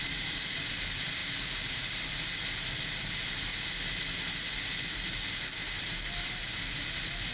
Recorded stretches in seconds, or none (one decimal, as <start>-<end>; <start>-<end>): 0.0-7.3